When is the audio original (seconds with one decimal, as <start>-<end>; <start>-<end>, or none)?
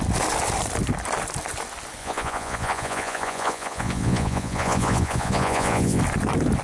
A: 0.0-2.0; 6.0-6.6